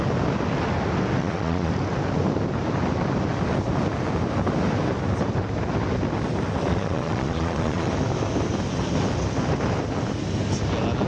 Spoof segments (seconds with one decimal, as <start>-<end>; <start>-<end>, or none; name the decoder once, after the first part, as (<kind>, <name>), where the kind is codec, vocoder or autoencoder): 1.2-1.7 (vocoder, Vocos); 6.7-7.9